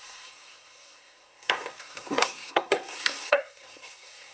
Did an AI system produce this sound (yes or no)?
yes